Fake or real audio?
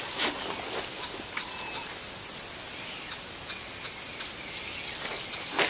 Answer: real